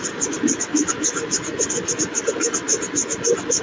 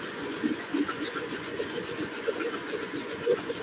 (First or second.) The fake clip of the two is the second